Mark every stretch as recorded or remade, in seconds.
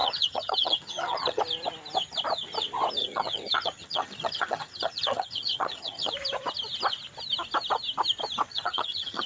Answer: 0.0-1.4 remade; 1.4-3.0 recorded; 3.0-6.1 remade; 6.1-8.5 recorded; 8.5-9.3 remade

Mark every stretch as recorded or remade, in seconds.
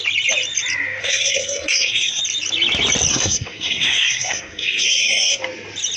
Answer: 0.0-1.0 recorded; 1.0-2.2 remade; 2.2-3.1 recorded; 3.1-5.4 remade; 5.4-6.0 recorded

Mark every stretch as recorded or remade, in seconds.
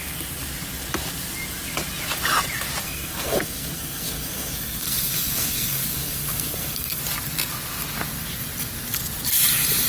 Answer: 0.0-2.8 recorded; 2.8-7.0 remade; 7.0-9.9 recorded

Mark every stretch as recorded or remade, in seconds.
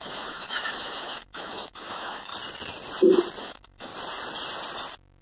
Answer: 0.0-2.3 remade; 2.3-3.4 recorded; 3.4-3.9 remade; 3.9-5.2 recorded